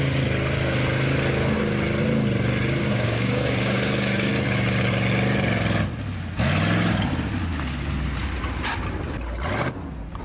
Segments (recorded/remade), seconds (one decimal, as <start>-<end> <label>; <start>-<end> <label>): 0.0-2.8 recorded; 2.8-4.3 remade; 4.3-10.2 recorded